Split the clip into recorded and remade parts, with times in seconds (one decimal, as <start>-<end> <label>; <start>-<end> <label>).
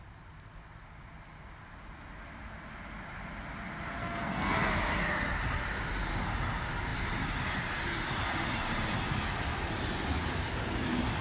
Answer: 0.0-4.0 recorded; 4.0-4.7 remade; 4.7-11.2 recorded